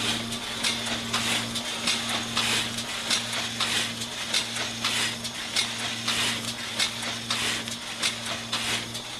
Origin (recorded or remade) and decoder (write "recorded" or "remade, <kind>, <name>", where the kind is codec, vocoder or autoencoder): recorded